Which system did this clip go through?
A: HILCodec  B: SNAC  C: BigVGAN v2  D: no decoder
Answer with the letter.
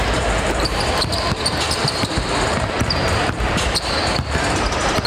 C